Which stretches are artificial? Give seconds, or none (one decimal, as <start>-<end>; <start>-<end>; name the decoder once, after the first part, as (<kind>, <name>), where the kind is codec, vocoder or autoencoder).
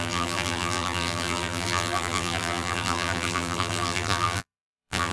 0.0-5.1 (vocoder, BigVGAN v2)